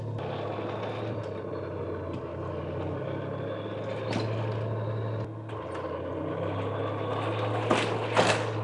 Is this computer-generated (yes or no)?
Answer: no